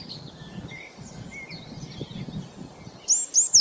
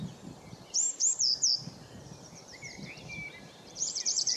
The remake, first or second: second